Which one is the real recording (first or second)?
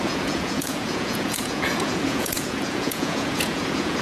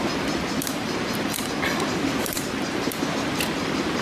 second